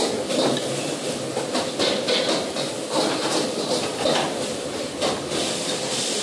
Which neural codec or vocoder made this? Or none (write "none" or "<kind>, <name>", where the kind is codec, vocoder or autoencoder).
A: none